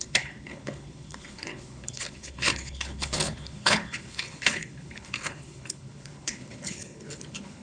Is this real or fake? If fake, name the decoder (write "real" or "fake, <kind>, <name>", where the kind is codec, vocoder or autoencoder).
fake, codec, HILCodec